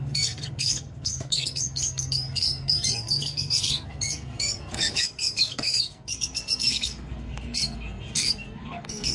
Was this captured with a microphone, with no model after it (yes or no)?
no